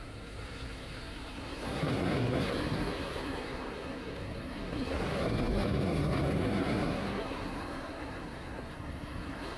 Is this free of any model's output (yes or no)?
no